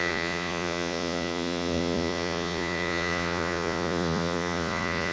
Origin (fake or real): fake